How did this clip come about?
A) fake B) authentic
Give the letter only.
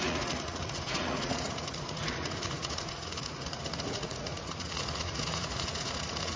A